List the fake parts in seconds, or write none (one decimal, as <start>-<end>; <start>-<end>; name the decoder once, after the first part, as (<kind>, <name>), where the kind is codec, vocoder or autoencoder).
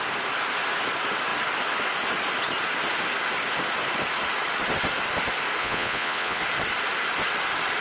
5.6-6.4 (vocoder, Vocos)